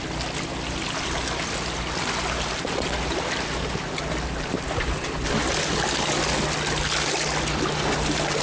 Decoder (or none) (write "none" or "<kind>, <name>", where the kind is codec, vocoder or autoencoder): none